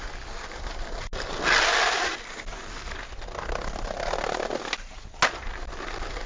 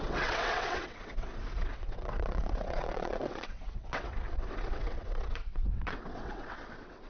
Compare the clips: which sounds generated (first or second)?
second